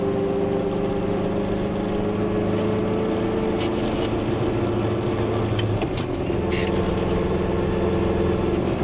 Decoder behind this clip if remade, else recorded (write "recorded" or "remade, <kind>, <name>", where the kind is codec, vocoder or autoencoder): recorded